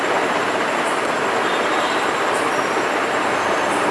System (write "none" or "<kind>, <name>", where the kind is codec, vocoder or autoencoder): none